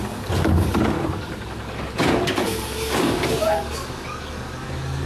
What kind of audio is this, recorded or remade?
remade